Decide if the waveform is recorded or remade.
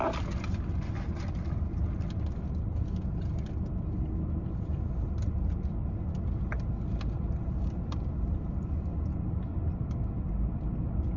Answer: recorded